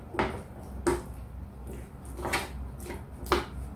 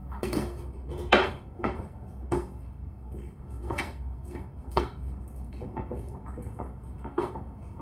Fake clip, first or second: second